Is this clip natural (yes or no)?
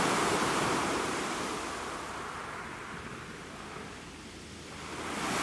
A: yes